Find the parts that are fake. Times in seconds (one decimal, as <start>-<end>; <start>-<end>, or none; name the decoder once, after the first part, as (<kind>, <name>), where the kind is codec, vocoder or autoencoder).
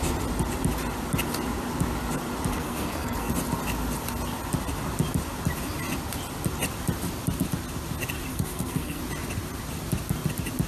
2.5-3.3 (codec, SNAC); 8.3-9.0